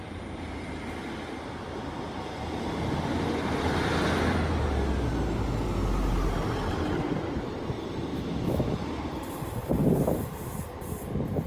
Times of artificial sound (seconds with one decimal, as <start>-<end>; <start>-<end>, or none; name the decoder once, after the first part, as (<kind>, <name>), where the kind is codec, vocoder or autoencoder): 8.1-8.7 (autoencoder, DAC-VAE)